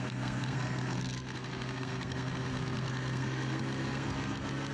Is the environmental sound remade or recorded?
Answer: remade